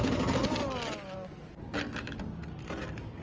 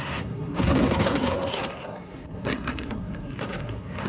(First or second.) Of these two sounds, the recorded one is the first